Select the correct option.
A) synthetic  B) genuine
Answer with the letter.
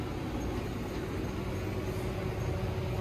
B